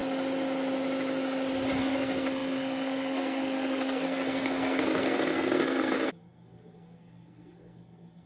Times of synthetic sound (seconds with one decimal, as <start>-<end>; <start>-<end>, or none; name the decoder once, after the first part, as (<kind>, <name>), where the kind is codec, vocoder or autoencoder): 1.8-8.3 (codec, SNAC)